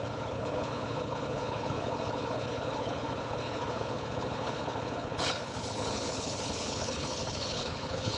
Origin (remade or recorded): remade